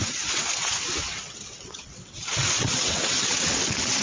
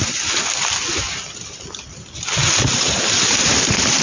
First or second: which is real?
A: second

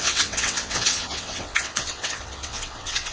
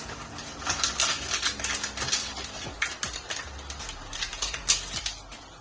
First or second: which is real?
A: second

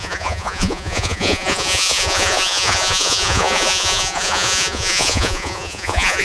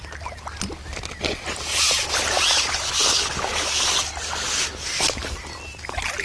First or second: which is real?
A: second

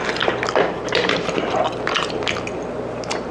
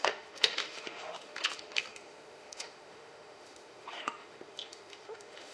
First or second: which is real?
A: first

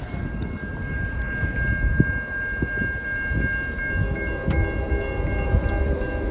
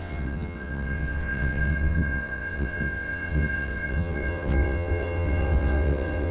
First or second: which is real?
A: first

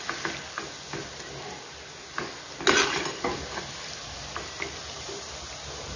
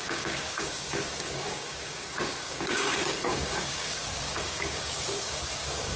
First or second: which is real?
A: first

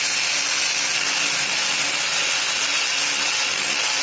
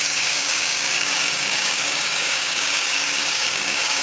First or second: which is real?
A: first